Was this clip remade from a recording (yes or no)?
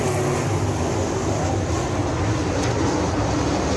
no